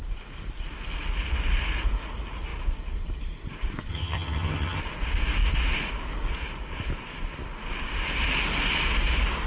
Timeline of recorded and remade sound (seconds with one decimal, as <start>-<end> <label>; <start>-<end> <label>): 0.0-3.9 recorded; 3.9-4.8 remade; 4.8-9.5 recorded